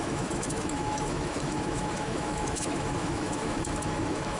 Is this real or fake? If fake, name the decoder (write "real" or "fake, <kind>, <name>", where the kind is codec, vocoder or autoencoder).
fake, autoencoder, DAC-VAE